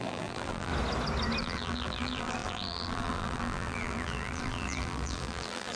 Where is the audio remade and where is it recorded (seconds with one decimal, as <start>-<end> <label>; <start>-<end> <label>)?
0.0-0.7 remade; 0.7-1.4 recorded; 1.4-5.8 remade